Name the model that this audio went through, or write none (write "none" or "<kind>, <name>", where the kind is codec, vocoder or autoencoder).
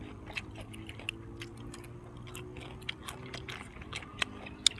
none